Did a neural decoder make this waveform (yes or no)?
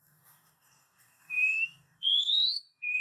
yes